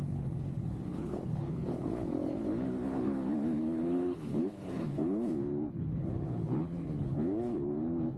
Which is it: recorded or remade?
remade